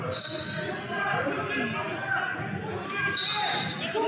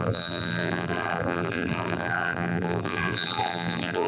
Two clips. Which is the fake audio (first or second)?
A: second